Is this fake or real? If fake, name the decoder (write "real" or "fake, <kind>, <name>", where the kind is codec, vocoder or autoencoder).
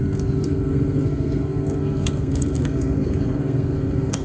fake, codec, SNAC